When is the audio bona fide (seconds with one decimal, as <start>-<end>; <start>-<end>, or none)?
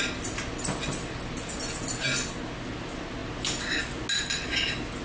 0.0-5.0